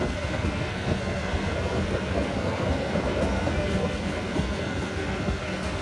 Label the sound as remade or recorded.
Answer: remade